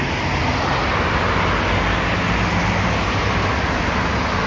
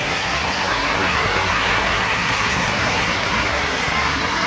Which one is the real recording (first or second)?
first